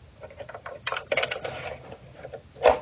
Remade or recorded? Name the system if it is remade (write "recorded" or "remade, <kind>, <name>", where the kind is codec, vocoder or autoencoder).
recorded